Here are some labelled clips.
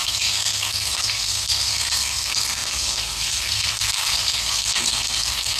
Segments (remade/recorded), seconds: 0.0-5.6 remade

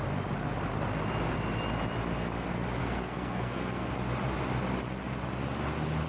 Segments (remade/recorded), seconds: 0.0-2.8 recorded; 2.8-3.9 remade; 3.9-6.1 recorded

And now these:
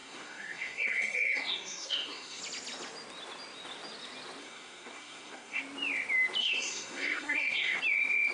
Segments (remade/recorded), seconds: 0.0-2.4 remade; 2.4-4.4 recorded; 4.4-5.6 remade; 5.6-6.4 recorded; 6.4-7.8 remade; 7.8-8.3 recorded

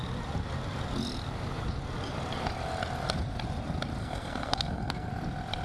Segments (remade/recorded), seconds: 0.0-4.0 recorded; 4.0-5.1 remade; 5.1-5.6 recorded